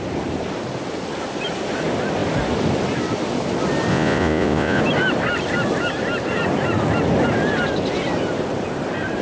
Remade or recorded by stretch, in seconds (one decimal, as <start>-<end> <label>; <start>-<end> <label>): 0.0-3.9 recorded; 3.9-4.8 remade; 4.8-9.2 recorded